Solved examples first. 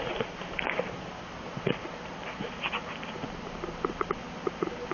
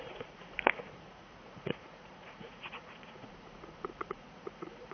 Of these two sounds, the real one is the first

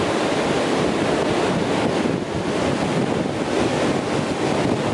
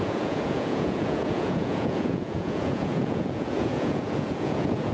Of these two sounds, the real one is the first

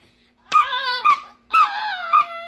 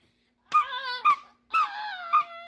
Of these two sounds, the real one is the second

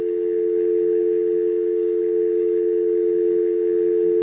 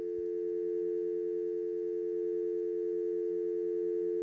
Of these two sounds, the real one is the second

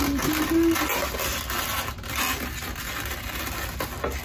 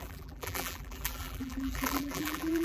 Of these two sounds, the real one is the first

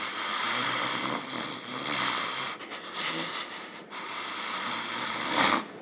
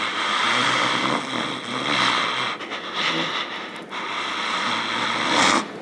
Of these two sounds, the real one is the second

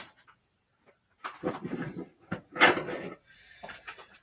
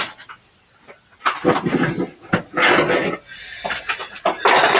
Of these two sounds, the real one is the second